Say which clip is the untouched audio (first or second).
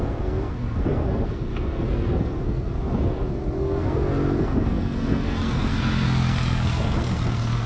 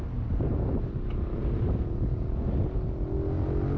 second